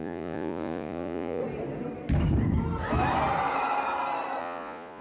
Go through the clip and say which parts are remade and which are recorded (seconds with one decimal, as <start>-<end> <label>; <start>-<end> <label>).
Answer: 0.0-1.4 remade; 1.4-4.4 recorded; 4.4-5.0 remade